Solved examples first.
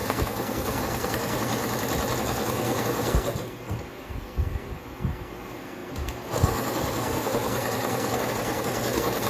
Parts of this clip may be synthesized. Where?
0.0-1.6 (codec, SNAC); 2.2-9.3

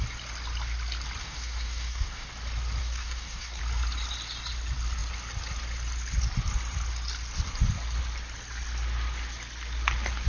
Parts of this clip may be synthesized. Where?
1.2-2.3 (codec, SNAC); 2.8-3.6